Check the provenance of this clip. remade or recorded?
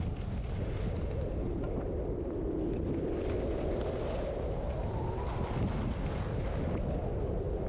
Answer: recorded